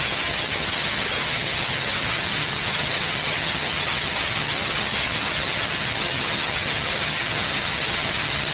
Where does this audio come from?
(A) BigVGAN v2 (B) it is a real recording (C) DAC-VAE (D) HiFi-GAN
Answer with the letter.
D